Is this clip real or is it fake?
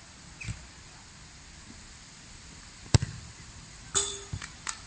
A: fake